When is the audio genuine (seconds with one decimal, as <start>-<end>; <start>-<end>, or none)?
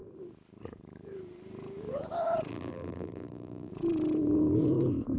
0.0-2.5; 3.7-5.2